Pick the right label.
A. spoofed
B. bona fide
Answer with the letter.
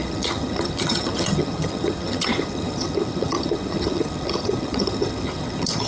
A